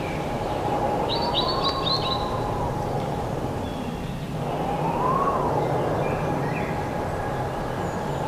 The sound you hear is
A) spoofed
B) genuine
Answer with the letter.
B